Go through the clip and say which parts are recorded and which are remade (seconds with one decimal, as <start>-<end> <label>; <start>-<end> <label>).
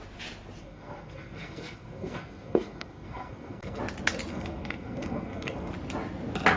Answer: 0.0-0.6 recorded; 0.6-3.8 remade; 3.8-4.3 recorded; 4.3-5.7 remade; 5.7-6.6 recorded